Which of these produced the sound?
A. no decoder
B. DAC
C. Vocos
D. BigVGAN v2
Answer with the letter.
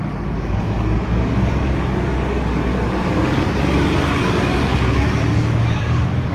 B